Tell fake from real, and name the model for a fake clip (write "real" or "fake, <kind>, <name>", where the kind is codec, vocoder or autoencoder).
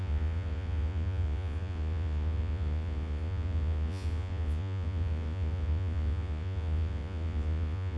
fake, vocoder, Vocos